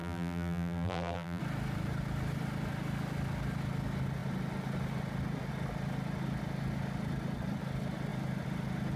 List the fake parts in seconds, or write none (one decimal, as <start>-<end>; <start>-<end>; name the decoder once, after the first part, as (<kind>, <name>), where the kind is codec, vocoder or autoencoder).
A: 0.0-1.4 (vocoder, BigVGAN v2)